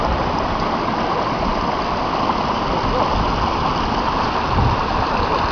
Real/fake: real